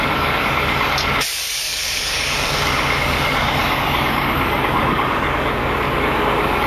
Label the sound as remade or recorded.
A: remade